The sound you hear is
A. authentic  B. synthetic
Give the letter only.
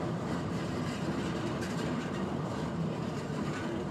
B